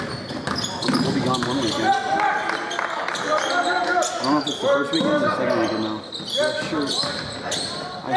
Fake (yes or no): no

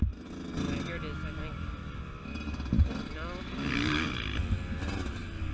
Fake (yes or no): no